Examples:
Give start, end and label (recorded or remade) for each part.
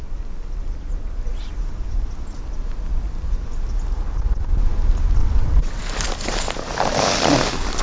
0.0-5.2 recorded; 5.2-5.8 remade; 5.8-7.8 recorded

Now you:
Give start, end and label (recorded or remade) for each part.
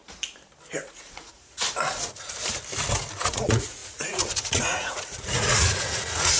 0.0-0.7 recorded; 0.7-1.6 remade; 1.6-3.3 recorded; 3.3-6.4 remade